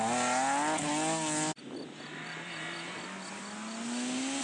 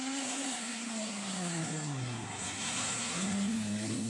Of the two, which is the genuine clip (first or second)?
first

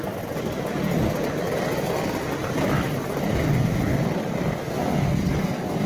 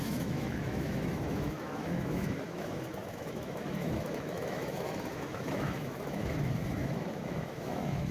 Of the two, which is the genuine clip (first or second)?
first